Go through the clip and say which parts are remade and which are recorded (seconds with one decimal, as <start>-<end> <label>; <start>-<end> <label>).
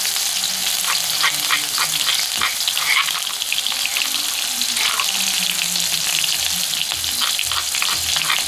0.0-8.5 recorded